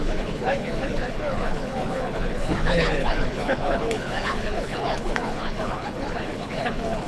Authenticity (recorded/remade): remade